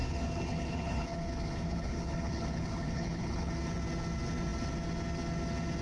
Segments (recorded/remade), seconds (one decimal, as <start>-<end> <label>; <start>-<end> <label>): 0.0-3.5 remade; 3.5-5.8 recorded

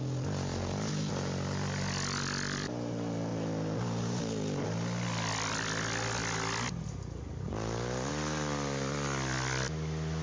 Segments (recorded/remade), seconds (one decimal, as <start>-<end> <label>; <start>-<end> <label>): 0.0-10.2 recorded